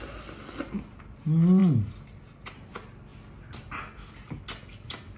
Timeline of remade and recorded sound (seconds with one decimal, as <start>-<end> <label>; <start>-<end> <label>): 0.0-5.2 recorded